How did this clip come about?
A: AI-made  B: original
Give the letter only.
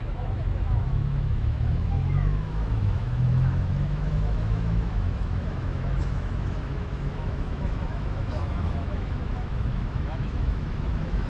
A